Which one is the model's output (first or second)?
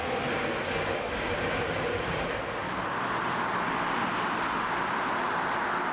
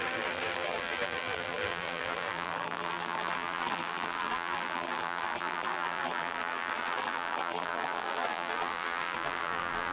second